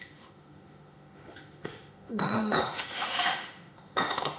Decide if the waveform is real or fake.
fake